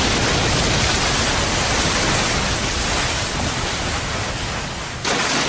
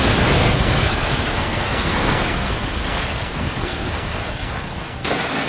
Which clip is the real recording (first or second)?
first